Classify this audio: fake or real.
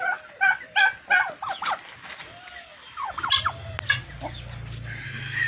real